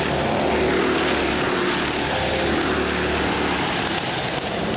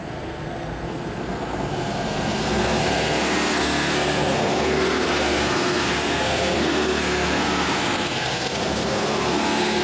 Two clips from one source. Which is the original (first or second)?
first